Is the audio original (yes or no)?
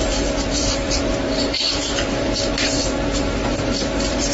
no